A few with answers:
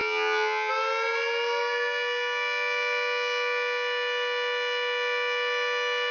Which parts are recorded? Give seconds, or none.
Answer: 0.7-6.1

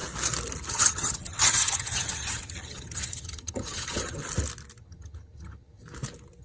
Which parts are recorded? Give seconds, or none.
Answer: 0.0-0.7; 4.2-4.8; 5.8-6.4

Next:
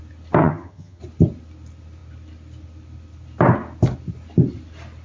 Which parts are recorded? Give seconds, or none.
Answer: 0.0-0.4; 1.0-5.0